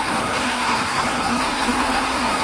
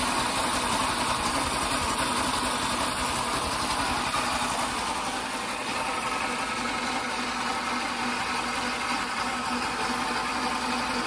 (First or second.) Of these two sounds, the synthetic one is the first